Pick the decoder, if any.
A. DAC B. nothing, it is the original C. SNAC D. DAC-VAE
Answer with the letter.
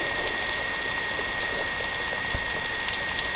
B